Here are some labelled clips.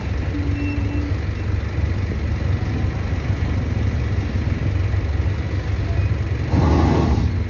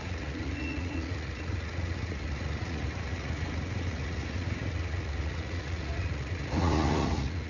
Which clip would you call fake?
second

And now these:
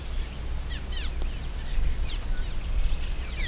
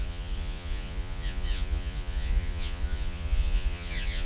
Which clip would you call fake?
second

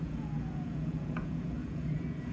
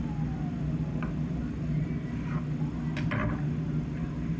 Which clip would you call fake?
first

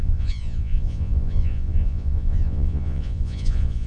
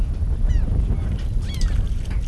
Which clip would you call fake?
first